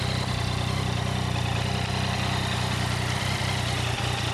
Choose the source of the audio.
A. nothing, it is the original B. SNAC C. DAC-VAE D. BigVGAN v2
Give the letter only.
A